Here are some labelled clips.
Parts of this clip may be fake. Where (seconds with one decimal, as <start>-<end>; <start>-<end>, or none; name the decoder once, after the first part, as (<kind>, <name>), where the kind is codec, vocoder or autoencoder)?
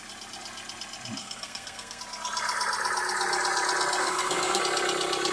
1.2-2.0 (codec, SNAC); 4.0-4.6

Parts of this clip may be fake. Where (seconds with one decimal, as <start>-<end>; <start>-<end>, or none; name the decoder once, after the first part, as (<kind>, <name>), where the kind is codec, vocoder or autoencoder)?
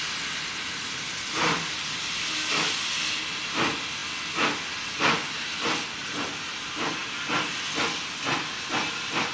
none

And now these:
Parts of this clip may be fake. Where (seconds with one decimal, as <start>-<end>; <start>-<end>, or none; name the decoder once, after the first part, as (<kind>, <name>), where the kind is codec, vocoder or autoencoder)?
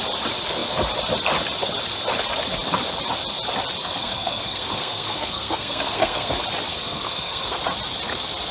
3.8-6.3 (codec, SNAC); 6.7-7.6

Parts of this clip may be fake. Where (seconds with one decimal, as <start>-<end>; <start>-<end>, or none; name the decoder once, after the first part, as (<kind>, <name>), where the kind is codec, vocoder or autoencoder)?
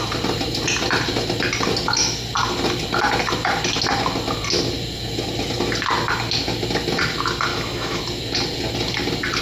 7.5-8.0 (autoencoder, DAC-VAE)